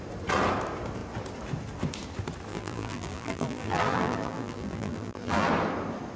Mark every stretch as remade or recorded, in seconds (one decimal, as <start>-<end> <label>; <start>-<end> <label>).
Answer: 0.0-2.5 recorded; 2.5-5.5 remade; 5.5-6.2 recorded